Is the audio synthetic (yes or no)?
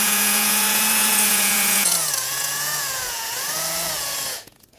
yes